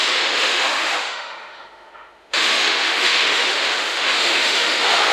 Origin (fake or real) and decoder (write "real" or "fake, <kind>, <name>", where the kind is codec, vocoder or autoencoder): fake, autoencoder, DAC-VAE